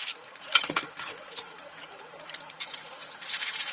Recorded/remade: remade